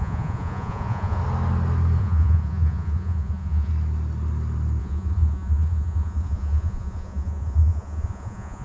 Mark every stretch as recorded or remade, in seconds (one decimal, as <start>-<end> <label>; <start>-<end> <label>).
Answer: 0.0-1.2 remade; 1.2-2.0 recorded; 2.0-3.7 remade; 3.7-4.8 recorded; 4.8-8.6 remade